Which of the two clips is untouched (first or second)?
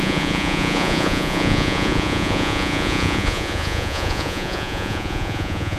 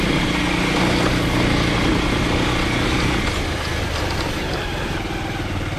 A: second